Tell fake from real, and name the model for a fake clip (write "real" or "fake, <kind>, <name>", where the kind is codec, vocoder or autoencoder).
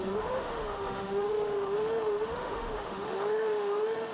fake, autoencoder, DAC-VAE